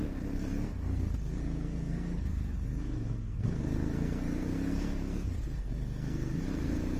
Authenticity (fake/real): fake